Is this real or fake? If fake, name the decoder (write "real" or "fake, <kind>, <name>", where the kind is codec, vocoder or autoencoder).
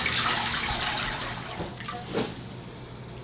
real